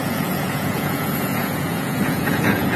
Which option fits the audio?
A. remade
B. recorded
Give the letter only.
A